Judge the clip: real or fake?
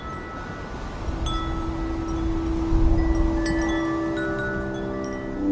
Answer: real